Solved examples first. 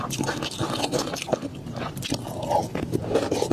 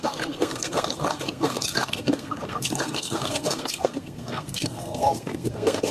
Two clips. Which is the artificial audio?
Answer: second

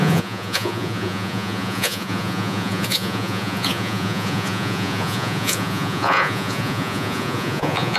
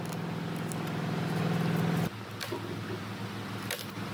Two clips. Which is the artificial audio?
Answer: first